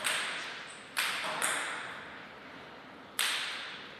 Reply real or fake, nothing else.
real